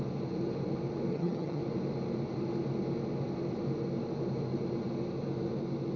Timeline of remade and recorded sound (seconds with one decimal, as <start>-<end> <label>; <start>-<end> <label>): 0.0-1.1 recorded; 1.1-1.6 remade; 1.6-6.0 recorded